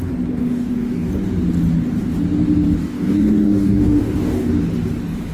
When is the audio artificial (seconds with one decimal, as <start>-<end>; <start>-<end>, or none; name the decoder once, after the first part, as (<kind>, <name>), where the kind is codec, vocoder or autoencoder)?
0.4-1.1 (codec, DAC); 2.8-4.5

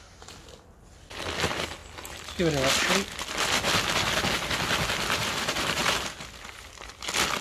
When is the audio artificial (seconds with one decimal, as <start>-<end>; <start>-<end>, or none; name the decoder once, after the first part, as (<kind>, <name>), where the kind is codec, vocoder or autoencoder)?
5.2-6.1 (vocoder, BigVGAN v2)

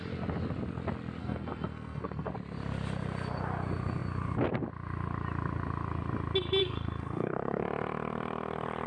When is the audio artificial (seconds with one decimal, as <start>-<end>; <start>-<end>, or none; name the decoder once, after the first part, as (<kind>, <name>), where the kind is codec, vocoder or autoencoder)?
1.2-2.3 (codec, SNAC); 6.6-7.6

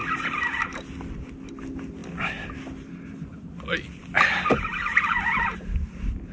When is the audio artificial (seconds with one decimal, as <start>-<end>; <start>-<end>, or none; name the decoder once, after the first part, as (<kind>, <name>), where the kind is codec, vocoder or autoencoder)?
none

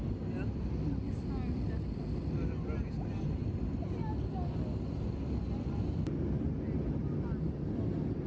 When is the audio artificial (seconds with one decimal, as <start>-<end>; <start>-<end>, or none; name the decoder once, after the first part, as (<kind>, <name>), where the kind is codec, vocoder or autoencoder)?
none

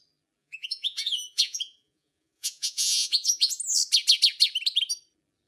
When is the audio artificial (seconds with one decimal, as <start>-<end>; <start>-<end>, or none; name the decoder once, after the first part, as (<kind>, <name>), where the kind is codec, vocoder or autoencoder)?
0.4-3.6 (vocoder, Vocos)

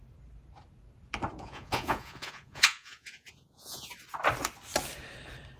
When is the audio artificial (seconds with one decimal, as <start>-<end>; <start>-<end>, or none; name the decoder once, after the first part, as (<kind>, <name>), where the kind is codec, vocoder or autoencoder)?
1.4-3.9 (vocoder, Vocos)